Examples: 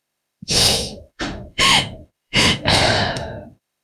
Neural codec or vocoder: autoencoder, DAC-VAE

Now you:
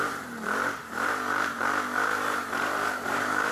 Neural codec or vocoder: vocoder, BigVGAN v2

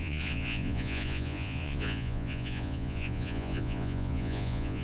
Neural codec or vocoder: vocoder, Vocos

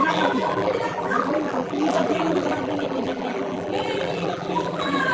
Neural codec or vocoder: vocoder, BigVGAN v2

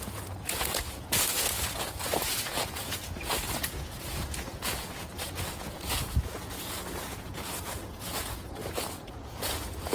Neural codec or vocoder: vocoder, Vocos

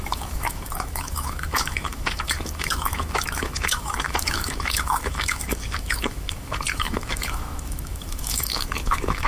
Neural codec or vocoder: autoencoder, DAC-VAE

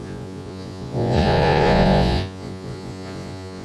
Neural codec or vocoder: vocoder, Vocos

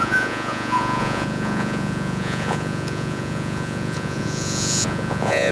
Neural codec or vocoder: vocoder, Vocos